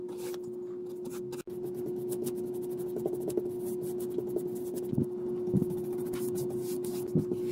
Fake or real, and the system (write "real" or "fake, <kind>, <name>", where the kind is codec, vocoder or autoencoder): real